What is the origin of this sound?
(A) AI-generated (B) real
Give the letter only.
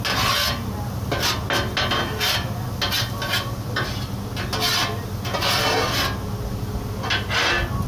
B